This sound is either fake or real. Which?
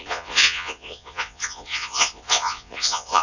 fake